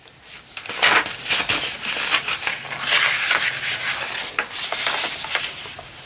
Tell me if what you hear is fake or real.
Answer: real